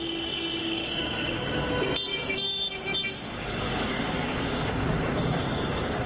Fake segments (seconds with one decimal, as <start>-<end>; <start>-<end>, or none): 0.6-1.7; 2.1-6.1